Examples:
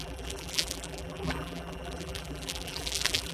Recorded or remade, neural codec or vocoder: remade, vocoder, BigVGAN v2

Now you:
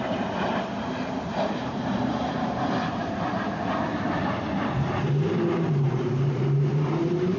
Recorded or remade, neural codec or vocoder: remade, vocoder, BigVGAN v2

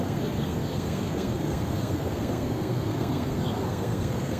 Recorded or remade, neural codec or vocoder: remade, codec, SNAC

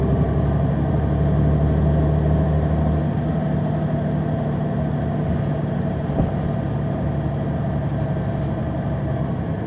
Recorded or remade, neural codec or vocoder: recorded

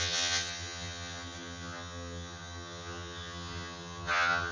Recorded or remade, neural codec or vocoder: remade, vocoder, HiFi-GAN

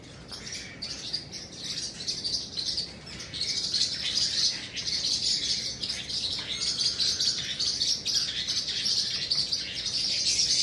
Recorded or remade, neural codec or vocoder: recorded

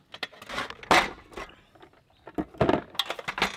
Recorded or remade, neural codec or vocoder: recorded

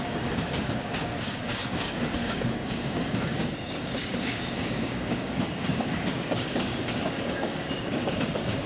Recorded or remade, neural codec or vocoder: remade, codec, DAC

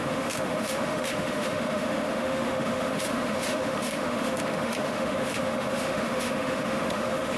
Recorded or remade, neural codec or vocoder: remade, autoencoder, DAC-VAE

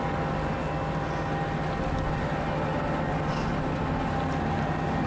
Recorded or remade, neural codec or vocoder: recorded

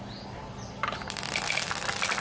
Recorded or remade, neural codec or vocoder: recorded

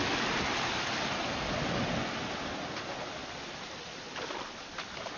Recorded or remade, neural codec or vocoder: recorded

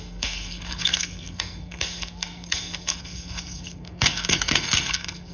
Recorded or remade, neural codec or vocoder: remade, codec, SNAC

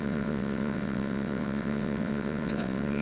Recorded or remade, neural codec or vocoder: remade, vocoder, WaveNeXt